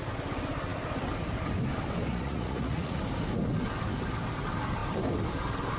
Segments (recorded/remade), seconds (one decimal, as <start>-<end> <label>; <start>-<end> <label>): 0.0-2.1 recorded; 2.1-3.0 remade; 3.0-5.8 recorded